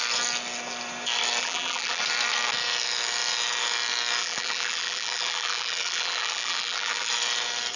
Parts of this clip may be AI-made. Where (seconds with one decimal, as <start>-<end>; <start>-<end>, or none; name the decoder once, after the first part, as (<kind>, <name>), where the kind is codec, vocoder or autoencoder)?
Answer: 1.4-2.0 (vocoder, BigVGAN v2); 4.2-7.1